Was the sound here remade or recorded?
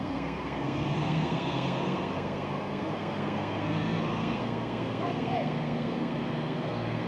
remade